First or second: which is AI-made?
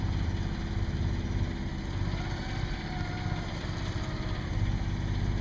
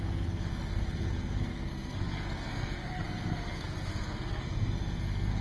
second